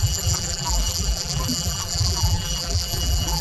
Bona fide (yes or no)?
no